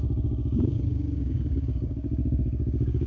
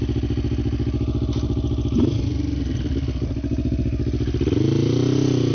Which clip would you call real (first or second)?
second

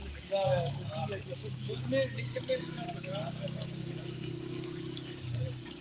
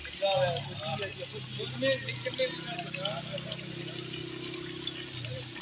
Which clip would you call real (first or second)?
second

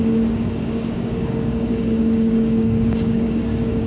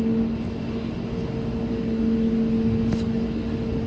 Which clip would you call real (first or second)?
second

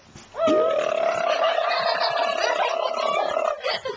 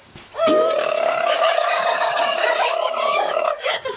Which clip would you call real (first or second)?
first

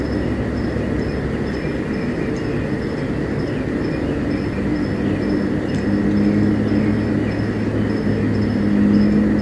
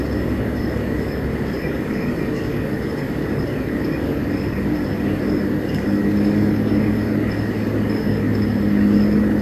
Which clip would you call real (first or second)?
first